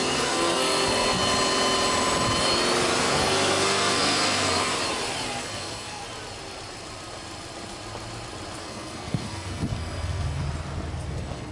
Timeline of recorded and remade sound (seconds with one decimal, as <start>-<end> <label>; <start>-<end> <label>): 0.0-1.2 remade; 1.2-3.0 recorded; 3.0-4.7 remade; 4.7-5.4 recorded; 5.4-6.0 remade; 6.0-8.6 recorded; 8.6-10.4 remade; 10.4-11.1 recorded; 11.1-11.5 remade